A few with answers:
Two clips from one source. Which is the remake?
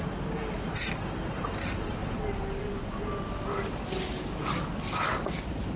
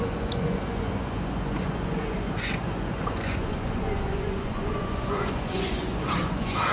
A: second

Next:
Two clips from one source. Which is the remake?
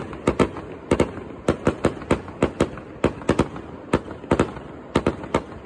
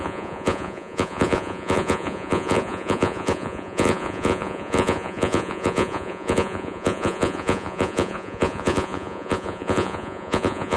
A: second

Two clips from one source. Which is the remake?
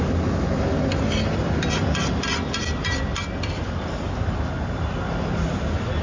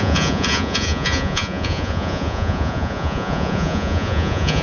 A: second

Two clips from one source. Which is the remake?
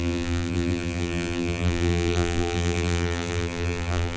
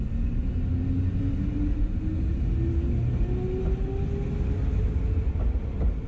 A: first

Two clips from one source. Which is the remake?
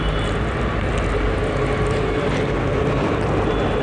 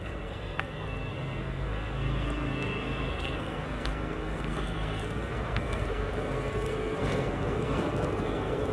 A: second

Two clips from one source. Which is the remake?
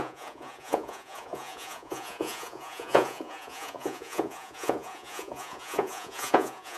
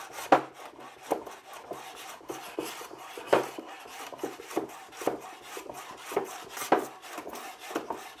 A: first